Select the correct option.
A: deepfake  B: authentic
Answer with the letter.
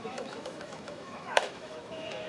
A